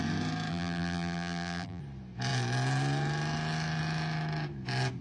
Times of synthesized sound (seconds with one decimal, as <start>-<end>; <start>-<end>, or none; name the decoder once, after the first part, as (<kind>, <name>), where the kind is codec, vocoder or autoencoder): 0.5-1.8 (vocoder, BigVGAN v2)